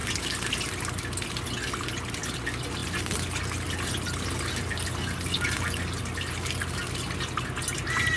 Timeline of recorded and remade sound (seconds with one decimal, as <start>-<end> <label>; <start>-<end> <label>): 0.0-8.2 recorded